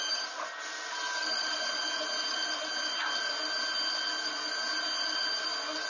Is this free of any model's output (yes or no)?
yes